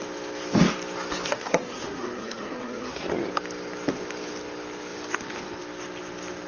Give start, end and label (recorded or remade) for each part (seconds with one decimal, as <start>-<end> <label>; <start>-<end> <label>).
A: 0.0-1.3 recorded; 1.3-3.1 remade; 3.1-6.5 recorded

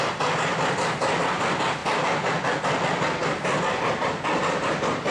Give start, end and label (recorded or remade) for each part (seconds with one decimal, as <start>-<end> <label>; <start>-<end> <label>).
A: 0.0-5.1 recorded